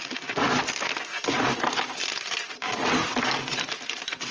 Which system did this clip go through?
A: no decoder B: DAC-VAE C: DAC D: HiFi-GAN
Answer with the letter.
A